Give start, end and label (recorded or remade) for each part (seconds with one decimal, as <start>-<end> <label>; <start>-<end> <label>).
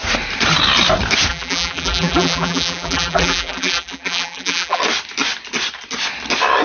0.0-1.3 recorded; 1.3-4.8 remade; 4.8-6.6 recorded